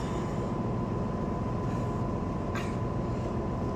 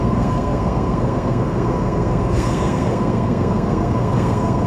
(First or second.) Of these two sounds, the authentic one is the first